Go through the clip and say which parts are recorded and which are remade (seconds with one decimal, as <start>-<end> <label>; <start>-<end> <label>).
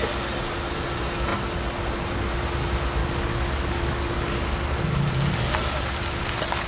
0.0-3.0 recorded; 3.0-4.7 remade; 4.7-6.7 recorded